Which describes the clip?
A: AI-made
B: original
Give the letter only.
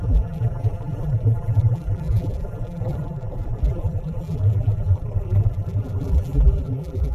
A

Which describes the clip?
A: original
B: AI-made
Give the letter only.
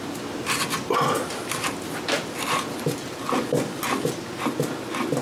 A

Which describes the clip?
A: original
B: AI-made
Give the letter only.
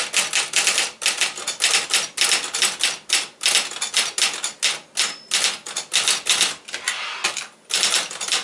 A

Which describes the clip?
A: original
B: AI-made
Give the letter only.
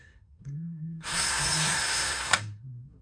B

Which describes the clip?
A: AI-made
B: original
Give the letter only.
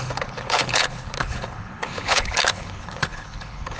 A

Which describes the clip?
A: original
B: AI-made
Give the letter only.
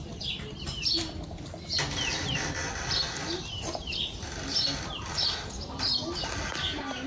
A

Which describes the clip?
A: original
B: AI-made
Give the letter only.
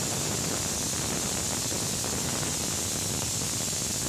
A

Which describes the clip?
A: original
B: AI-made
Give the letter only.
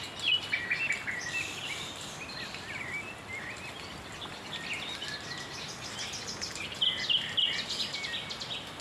A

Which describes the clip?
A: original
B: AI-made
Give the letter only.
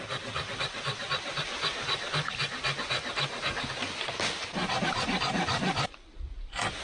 A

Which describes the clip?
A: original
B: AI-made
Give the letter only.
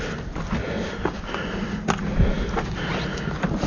A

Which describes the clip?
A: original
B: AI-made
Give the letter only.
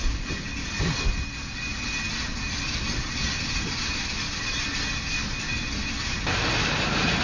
A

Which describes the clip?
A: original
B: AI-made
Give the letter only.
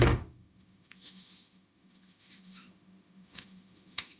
B